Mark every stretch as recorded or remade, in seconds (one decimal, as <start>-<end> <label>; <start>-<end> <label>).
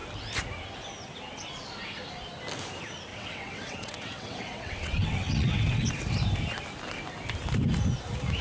0.0-3.1 recorded; 3.1-5.9 remade; 5.9-8.4 recorded